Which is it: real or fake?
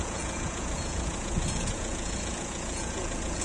fake